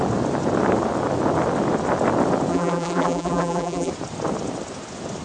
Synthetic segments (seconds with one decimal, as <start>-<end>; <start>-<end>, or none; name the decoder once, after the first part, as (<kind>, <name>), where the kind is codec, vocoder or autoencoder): 2.5-3.9 (vocoder, BigVGAN v2)